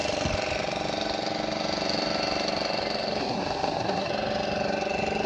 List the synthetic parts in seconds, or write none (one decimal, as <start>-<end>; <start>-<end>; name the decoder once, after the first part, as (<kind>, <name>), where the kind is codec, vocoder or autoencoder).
3.2-4.1 (codec, SNAC)